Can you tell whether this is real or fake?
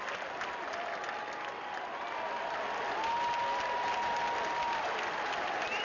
real